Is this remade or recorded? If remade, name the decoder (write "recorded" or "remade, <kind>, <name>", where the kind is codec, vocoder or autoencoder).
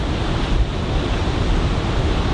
recorded